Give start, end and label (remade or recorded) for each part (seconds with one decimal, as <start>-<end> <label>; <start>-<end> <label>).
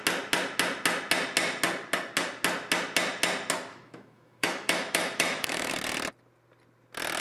0.0-3.7 recorded; 3.7-5.7 remade; 5.7-7.2 recorded